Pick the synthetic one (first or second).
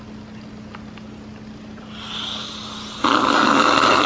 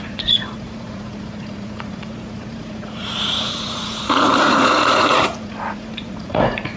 second